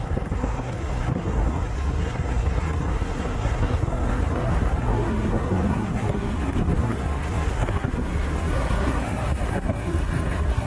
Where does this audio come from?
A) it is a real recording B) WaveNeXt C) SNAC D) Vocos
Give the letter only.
C